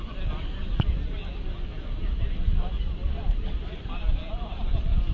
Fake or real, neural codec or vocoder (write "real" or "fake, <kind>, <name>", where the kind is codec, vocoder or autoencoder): real